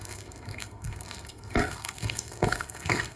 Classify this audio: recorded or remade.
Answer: remade